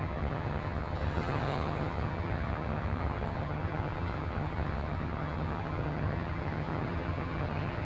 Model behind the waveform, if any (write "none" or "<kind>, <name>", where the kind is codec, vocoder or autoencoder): vocoder, HiFi-GAN